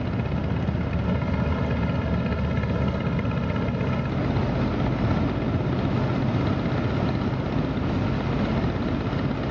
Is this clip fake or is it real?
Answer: real